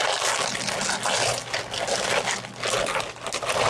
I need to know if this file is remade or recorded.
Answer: recorded